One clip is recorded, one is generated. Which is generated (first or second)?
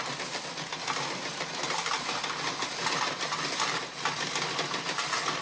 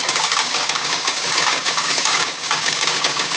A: second